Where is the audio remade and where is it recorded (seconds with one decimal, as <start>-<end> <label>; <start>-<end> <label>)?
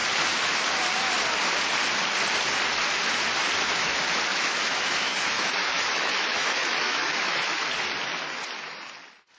0.0-4.3 recorded; 4.3-7.7 remade; 7.7-9.4 recorded